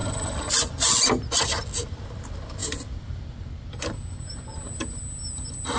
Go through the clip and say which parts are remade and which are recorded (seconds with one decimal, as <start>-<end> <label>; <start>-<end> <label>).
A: 0.0-5.8 recorded

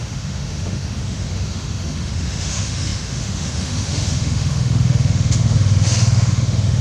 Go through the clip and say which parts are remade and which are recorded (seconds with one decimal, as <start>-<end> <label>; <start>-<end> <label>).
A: 0.0-6.8 remade

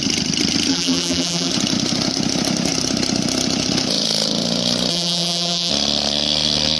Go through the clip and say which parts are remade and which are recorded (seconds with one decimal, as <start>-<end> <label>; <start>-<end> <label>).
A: 0.0-0.7 recorded; 0.7-1.5 remade; 1.5-4.9 recorded; 4.9-5.7 remade; 5.7-6.8 recorded